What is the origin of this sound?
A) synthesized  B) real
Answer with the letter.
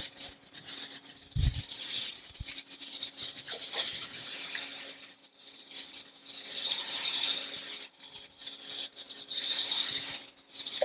B